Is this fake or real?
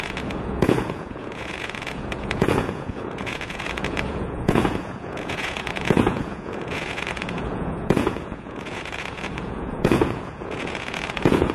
fake